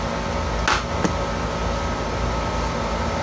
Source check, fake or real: real